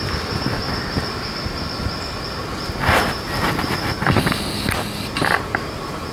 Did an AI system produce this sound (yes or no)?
no